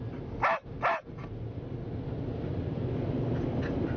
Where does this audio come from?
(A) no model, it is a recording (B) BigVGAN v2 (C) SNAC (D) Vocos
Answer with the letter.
A